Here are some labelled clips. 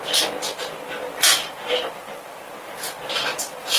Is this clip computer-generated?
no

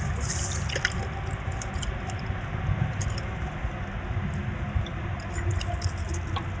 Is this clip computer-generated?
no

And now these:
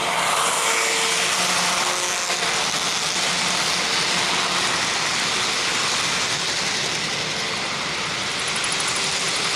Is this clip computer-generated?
no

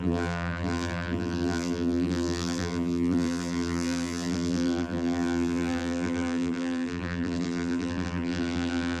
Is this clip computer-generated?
yes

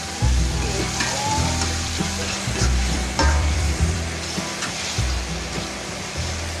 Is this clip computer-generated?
yes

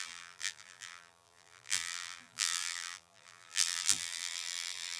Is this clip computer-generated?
yes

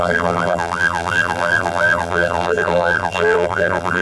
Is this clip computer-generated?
yes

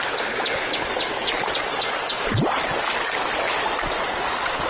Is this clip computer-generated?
no